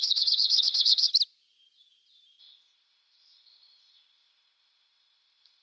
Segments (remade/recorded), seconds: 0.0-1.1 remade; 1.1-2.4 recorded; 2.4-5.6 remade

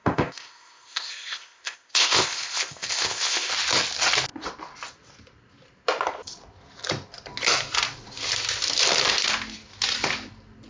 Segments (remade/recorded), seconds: 0.0-3.5 remade; 3.5-10.7 recorded